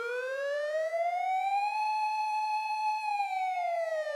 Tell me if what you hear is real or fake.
fake